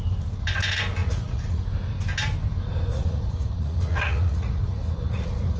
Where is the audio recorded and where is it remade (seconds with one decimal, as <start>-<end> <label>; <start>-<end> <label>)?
0.0-1.0 recorded; 1.0-1.6 remade; 1.6-2.9 recorded; 2.9-5.6 remade